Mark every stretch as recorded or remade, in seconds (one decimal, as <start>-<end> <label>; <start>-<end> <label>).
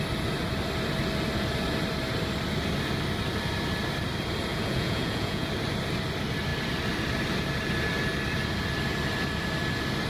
0.0-4.5 recorded; 4.5-5.5 remade; 5.5-10.1 recorded